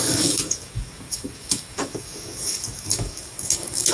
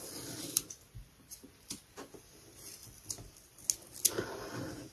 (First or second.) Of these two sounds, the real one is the second